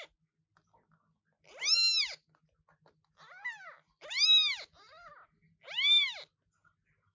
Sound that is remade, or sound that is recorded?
recorded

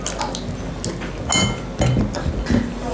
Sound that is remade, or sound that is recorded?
recorded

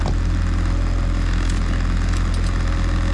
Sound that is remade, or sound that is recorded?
recorded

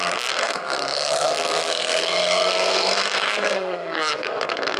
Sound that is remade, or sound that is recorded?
remade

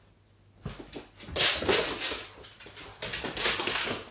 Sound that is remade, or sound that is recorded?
recorded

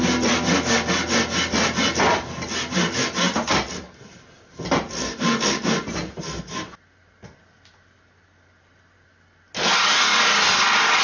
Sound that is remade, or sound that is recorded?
recorded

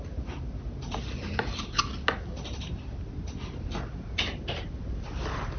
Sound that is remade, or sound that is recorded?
recorded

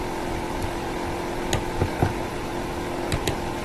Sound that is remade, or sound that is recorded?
remade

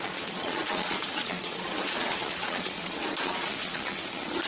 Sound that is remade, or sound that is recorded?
remade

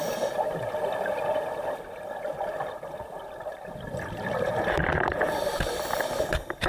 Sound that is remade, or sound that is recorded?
remade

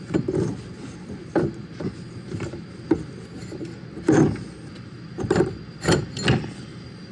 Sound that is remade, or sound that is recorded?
recorded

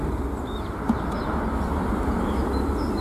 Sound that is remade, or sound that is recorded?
recorded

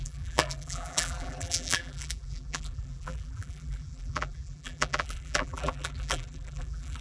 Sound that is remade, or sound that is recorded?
remade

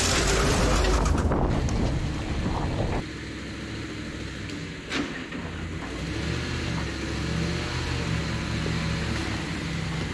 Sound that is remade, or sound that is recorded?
recorded